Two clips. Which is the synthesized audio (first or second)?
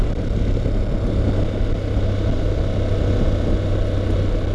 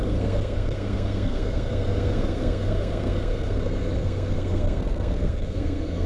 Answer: second